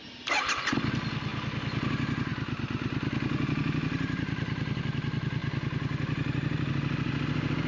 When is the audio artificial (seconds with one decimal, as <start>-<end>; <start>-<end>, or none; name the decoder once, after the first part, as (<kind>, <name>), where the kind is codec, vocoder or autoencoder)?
none